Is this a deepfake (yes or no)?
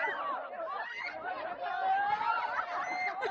no